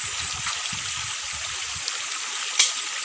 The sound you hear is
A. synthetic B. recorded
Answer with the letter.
B